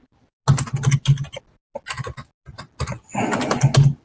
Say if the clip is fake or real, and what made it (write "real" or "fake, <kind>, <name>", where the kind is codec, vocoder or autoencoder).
real